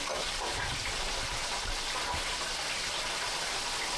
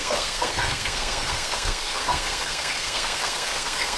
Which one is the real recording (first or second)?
first